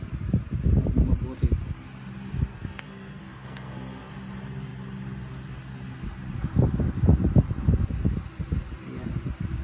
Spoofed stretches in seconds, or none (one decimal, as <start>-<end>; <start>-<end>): 2.5-4.1